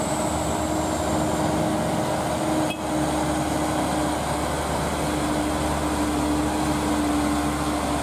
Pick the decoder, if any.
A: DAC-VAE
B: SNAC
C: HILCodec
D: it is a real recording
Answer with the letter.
D